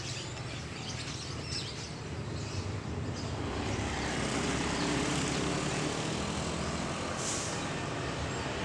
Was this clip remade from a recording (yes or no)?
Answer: no